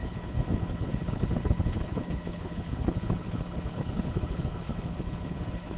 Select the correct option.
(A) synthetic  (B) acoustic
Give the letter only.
A